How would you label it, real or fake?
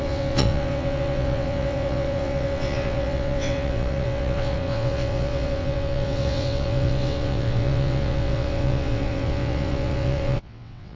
fake